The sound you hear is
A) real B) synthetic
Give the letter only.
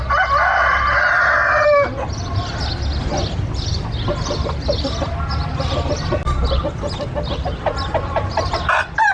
A